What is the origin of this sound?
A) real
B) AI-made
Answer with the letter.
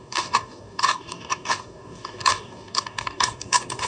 B